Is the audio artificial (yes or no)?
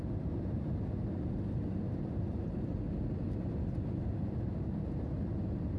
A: no